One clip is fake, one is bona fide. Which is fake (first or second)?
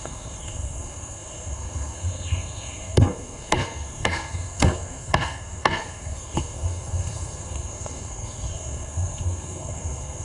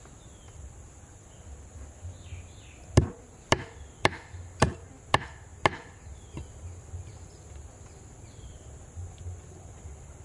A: first